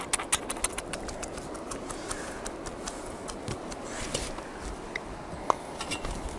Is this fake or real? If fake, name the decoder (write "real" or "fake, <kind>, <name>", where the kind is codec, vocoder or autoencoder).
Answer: real